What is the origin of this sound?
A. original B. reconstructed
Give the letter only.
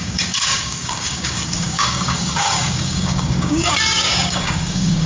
B